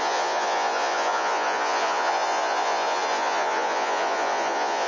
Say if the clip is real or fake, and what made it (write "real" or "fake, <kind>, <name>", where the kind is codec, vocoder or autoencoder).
fake, vocoder, Vocos